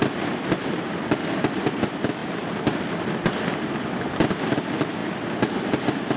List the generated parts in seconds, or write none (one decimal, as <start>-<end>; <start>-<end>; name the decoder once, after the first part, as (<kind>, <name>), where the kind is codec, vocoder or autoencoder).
none